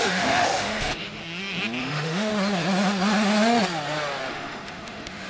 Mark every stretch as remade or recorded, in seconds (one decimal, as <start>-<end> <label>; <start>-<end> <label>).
0.0-1.2 remade; 1.2-1.8 recorded; 1.8-2.3 remade; 2.3-4.3 recorded; 4.3-5.3 remade

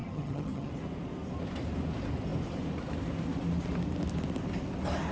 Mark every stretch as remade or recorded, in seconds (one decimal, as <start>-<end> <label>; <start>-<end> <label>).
0.0-0.7 remade; 0.7-5.1 recorded

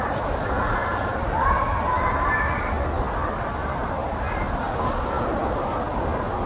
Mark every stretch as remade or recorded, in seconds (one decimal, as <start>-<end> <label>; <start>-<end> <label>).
0.0-6.5 recorded

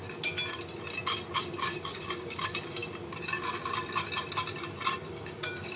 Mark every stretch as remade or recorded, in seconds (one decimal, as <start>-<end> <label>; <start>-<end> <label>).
0.0-1.4 recorded; 1.4-2.8 remade; 2.8-5.1 recorded; 5.1-5.8 remade